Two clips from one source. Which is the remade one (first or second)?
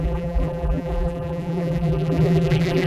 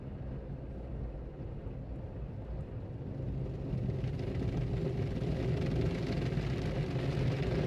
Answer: first